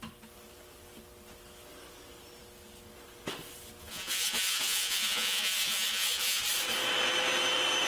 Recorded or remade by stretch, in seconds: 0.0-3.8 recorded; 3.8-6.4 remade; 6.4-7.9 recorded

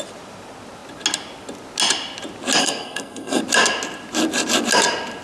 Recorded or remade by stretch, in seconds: 0.0-2.6 recorded; 2.6-3.4 remade; 3.4-5.2 recorded

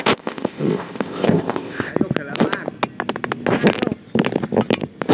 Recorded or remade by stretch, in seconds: 0.0-1.9 remade; 1.9-5.1 recorded

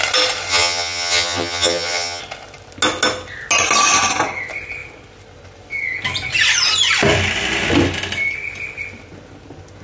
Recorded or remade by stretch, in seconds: 0.0-0.5 recorded; 0.5-2.2 remade; 2.2-9.8 recorded